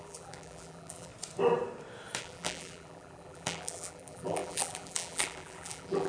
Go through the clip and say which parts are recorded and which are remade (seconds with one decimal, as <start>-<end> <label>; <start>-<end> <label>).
0.0-1.1 remade; 1.1-2.2 recorded; 2.2-6.1 remade